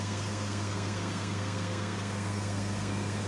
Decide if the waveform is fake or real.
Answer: fake